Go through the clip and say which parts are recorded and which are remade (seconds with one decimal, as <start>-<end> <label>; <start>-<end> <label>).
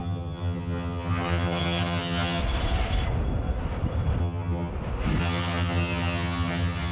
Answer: 0.0-2.4 remade; 2.4-4.2 recorded; 4.2-4.7 remade; 4.7-5.2 recorded; 5.2-6.9 remade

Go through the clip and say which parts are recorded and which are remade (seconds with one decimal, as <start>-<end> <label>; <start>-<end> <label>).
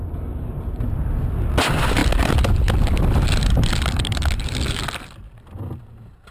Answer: 0.0-6.3 recorded